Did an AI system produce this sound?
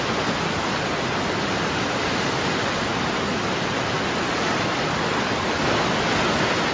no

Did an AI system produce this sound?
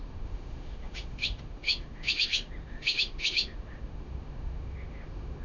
yes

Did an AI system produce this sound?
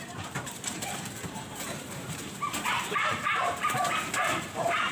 yes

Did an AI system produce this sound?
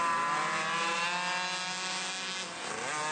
no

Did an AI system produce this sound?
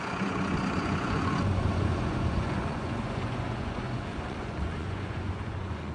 yes